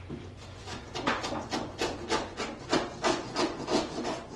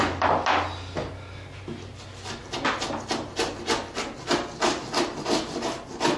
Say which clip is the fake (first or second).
first